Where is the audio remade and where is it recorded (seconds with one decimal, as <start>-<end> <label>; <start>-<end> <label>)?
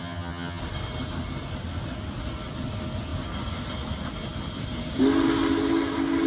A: 0.0-0.6 remade; 0.6-6.3 recorded